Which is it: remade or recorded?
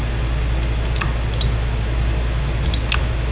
recorded